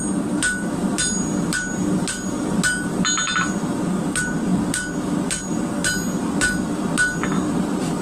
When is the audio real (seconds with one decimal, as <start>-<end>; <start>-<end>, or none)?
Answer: 0.0-8.0